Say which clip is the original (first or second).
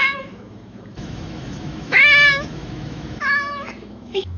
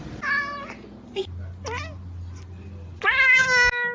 second